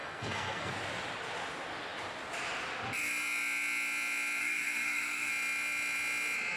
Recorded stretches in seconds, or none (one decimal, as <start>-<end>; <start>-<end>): 0.7-4.4; 5.3-6.6